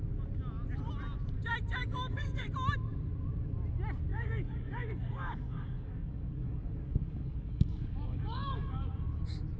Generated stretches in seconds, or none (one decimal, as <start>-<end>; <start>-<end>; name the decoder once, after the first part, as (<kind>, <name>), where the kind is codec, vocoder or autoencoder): 1.8-2.5 (codec, DAC); 4.1-8.9